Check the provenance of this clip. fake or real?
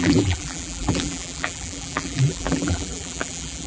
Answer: fake